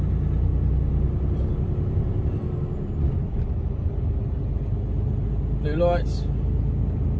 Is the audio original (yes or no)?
yes